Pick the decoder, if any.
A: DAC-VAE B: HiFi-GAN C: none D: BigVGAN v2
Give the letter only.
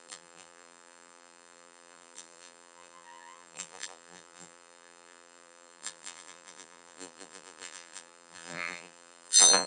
D